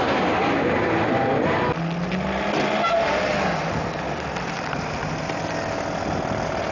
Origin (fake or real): real